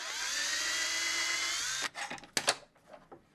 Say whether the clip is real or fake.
real